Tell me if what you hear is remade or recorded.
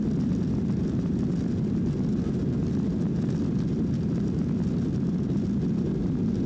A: recorded